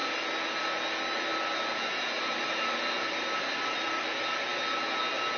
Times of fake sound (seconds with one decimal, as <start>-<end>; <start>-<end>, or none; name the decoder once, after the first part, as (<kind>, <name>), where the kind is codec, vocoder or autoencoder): none